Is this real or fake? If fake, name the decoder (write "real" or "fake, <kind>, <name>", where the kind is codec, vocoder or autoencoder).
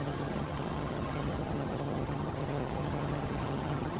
fake, vocoder, HiFi-GAN